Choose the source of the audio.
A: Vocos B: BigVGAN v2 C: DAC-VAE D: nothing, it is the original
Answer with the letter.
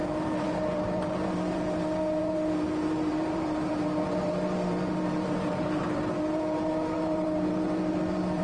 B